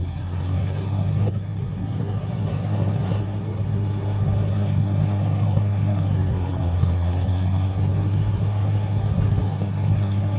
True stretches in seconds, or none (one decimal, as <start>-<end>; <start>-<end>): none